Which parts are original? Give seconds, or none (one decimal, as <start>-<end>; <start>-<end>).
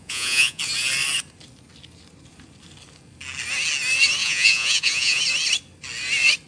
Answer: 0.6-4.2; 5.2-6.5